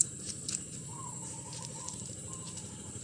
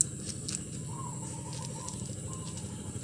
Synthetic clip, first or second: first